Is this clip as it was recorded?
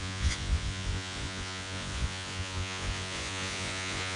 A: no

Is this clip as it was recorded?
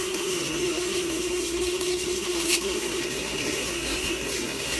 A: no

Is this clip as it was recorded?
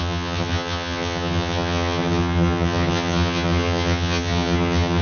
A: no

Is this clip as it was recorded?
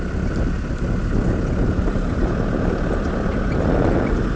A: yes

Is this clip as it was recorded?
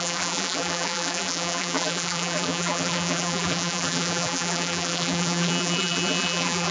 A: no